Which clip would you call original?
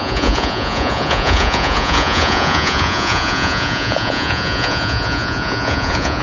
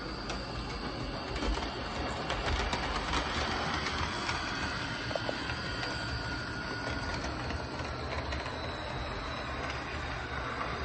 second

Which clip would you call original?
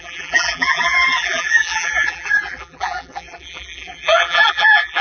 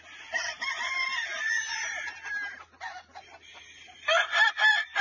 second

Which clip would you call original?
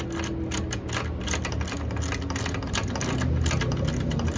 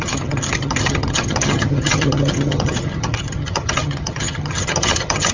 first